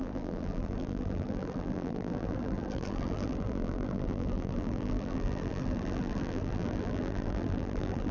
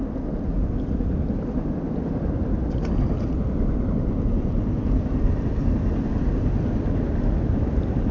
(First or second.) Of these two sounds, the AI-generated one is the first